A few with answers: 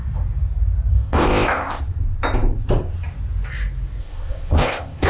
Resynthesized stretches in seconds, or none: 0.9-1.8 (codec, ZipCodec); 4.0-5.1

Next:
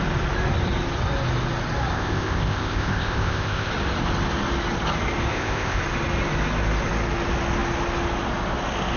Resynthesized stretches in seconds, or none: 1.9-3.7 (codec, ZipCodec); 5.3-5.8

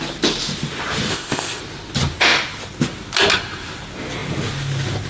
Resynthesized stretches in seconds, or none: 1.1-1.6 (codec, ZipCodec)